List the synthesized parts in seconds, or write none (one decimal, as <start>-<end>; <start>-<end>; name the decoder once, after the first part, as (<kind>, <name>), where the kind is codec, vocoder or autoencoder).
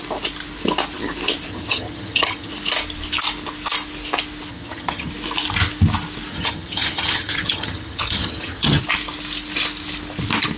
1.5-2.5 (vocoder, HiFi-GAN); 4.5-5.1; 6.3-8.8